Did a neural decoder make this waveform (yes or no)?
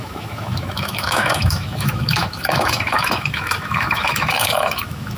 yes